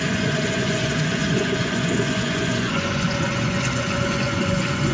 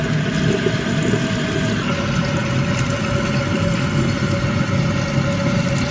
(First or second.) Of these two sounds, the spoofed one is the first